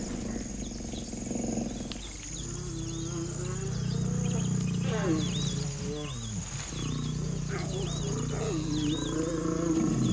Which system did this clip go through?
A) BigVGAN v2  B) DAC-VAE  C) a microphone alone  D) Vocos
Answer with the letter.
C